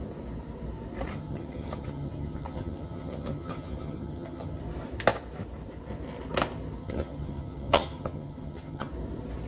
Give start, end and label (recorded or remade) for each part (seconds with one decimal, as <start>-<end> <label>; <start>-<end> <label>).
0.0-1.1 recorded; 1.1-4.6 remade; 4.6-6.8 recorded; 6.8-8.9 remade; 8.9-9.5 recorded